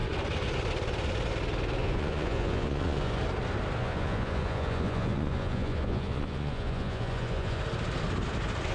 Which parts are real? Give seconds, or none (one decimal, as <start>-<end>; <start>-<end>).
0.0-1.8; 3.2-3.8; 7.6-8.7